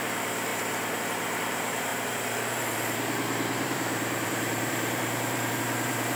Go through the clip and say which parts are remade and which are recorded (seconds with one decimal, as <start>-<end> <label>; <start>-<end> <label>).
0.0-6.2 remade